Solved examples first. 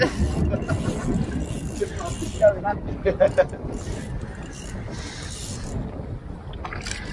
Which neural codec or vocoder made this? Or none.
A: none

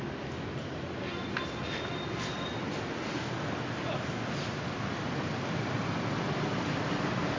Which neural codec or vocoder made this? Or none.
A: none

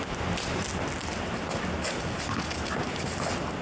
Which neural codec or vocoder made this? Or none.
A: none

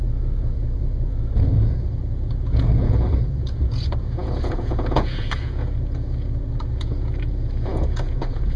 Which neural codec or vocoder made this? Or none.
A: vocoder, Vocos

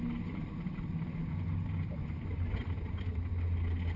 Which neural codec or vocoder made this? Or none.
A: none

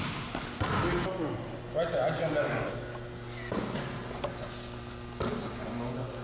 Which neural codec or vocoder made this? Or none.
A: none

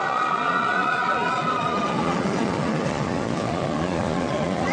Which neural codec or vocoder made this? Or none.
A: vocoder, Vocos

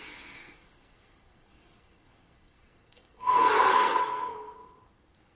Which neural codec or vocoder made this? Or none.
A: codec, SNAC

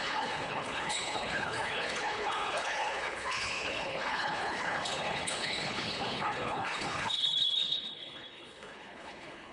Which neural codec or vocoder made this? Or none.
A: codec, HILCodec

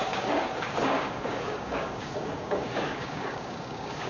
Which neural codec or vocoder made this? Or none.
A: codec, DAC